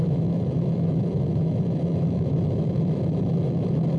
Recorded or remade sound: remade